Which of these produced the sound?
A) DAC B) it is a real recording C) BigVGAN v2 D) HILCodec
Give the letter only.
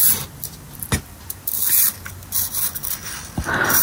B